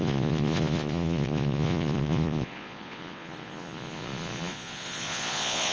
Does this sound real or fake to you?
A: fake